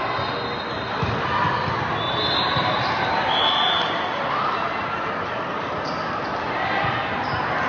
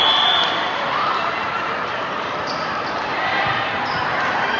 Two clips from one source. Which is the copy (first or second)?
second